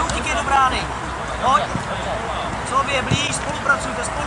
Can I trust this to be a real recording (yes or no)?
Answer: yes